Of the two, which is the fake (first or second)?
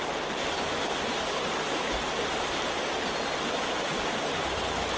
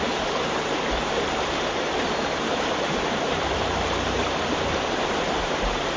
second